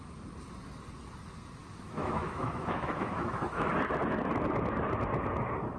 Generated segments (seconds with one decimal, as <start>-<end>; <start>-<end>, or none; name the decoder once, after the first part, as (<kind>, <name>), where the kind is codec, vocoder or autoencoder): 1.6-3.7 (autoencoder, DAC-VAE)